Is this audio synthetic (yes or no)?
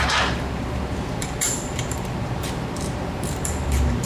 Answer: yes